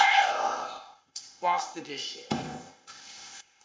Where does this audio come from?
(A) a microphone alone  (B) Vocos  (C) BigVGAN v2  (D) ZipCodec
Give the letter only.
D